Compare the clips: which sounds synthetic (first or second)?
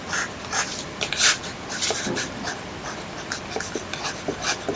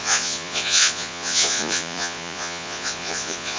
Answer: second